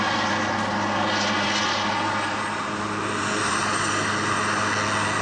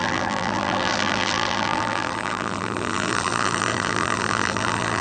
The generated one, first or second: second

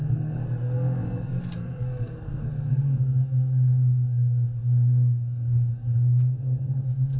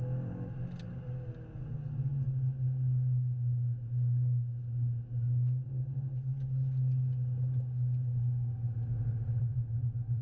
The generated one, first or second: first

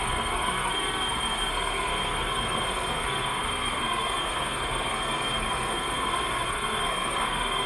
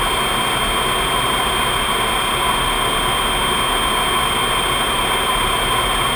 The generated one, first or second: first